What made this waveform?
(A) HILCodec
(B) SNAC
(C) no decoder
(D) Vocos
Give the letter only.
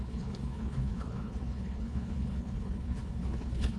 A